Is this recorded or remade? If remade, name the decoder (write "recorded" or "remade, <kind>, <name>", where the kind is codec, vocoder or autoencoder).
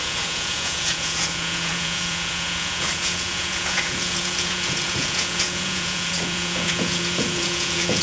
remade, vocoder, Vocos